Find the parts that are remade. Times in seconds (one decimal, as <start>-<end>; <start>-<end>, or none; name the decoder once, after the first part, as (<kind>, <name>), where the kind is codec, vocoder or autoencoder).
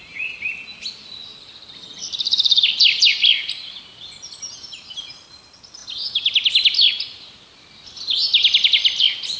none